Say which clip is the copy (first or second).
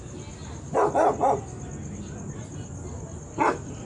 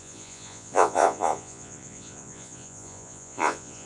second